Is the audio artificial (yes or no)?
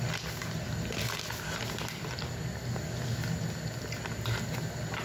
no